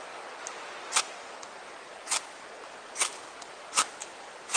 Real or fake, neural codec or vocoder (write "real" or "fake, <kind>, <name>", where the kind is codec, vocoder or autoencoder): real